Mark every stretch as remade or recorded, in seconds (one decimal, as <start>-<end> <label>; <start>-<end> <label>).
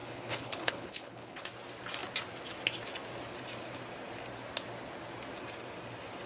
0.0-1.5 remade; 1.5-6.3 recorded